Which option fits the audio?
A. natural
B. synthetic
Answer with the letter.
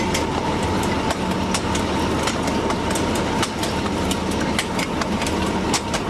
A